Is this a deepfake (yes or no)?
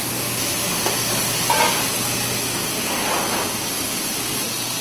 no